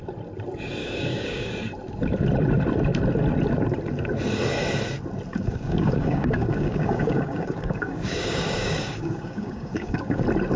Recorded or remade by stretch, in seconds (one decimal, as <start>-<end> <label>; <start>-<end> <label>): 0.0-0.8 recorded; 0.8-1.5 remade; 1.5-5.3 recorded; 5.3-10.2 remade; 10.2-10.6 recorded